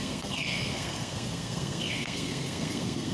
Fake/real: fake